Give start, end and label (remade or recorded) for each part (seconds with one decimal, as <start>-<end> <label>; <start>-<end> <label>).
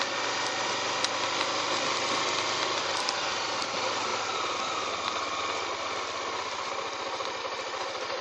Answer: 0.0-8.2 recorded